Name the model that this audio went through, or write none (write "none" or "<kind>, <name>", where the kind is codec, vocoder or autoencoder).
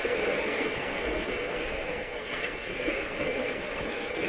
codec, SNAC